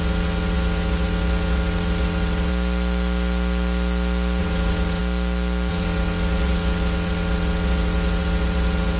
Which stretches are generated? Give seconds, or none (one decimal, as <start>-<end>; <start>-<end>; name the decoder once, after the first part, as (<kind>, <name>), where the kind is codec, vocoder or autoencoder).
0.0-2.5 (vocoder, WaveNeXt); 4.4-5.0; 5.7-9.0